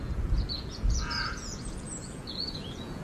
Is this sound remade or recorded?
remade